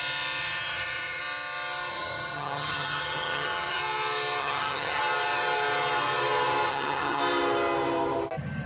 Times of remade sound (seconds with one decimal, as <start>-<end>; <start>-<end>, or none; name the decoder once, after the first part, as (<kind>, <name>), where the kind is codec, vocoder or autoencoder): 0.4-1.2 (vocoder, HiFi-GAN); 1.9-3.8; 4.4-5.0; 6.7-7.2